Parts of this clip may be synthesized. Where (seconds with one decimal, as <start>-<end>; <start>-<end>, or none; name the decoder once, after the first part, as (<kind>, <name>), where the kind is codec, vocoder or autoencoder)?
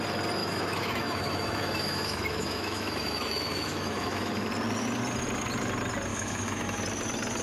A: 0.4-4.5 (autoencoder, DAC-VAE); 6.1-6.8